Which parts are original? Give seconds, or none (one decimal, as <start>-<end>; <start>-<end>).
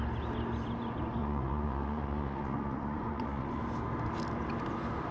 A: 0.0-1.2; 3.6-5.1